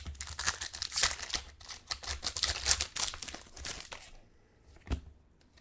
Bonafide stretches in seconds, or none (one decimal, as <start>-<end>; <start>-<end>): 0.0-5.6